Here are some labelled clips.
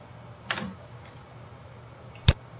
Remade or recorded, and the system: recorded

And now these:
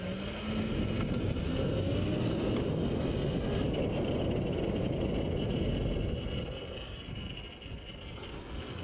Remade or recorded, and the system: recorded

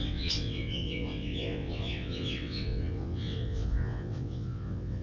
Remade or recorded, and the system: remade, vocoder, WaveNeXt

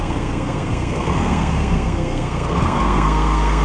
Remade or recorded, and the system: remade, codec, SNAC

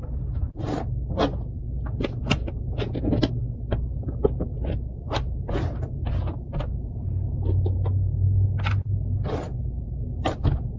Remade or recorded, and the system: recorded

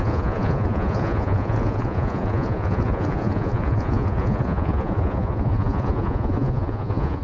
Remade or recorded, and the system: remade, vocoder, Vocos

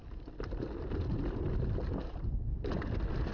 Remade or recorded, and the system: recorded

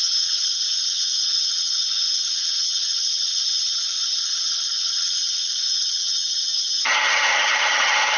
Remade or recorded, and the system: remade, vocoder, HiFi-GAN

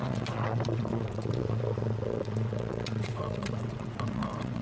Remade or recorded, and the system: remade, vocoder, WaveNeXt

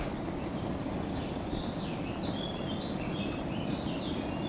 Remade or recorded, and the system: recorded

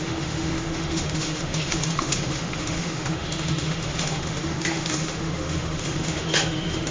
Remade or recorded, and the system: remade, autoencoder, DAC-VAE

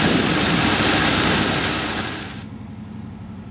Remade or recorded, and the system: recorded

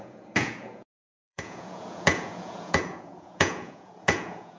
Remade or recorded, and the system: remade, vocoder, Vocos